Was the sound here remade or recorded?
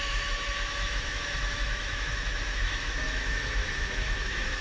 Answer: remade